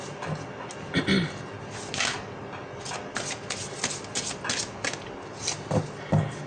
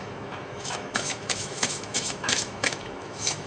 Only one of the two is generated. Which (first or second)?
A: second